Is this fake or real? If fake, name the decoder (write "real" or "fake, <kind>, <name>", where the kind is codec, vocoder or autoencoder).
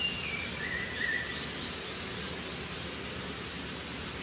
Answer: real